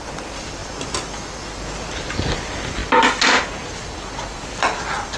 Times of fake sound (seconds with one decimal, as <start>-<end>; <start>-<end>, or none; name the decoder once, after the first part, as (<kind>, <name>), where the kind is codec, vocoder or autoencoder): 0.0-0.6 (vocoder, BigVGAN v2); 1.9-2.8; 3.6-5.2